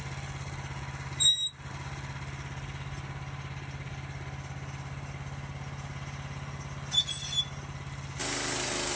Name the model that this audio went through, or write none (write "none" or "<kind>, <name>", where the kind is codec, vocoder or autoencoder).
none